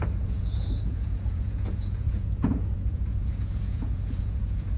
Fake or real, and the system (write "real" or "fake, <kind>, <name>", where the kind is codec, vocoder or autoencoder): fake, vocoder, Vocos